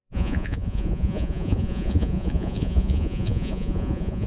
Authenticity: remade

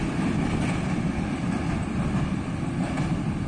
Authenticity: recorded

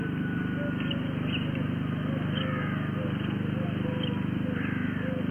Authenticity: recorded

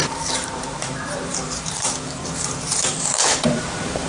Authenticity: remade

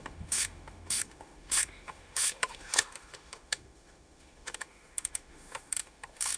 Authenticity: remade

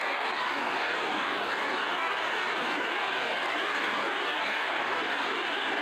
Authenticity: remade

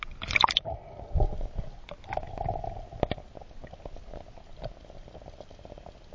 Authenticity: recorded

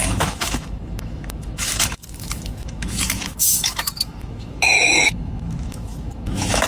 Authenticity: remade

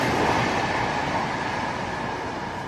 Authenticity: remade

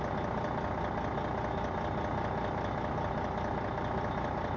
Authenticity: recorded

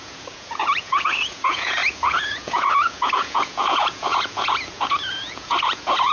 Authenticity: remade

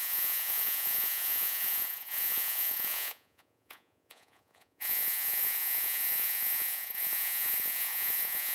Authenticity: remade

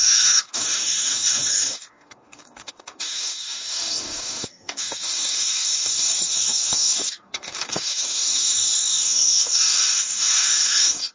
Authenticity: remade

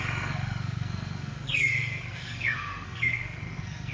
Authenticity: remade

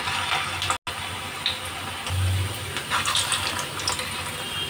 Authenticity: recorded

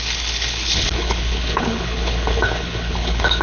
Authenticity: remade